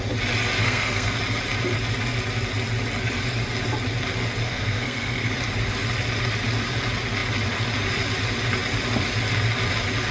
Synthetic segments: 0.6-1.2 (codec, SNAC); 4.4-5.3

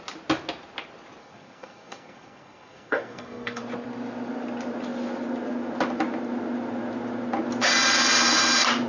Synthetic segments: 1.2-3.6 (codec, SNAC)

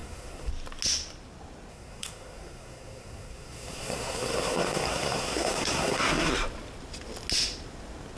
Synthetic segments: 0.0-0.5 (codec, SNAC); 1.7-6.3